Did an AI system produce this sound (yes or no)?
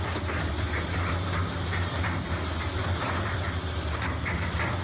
no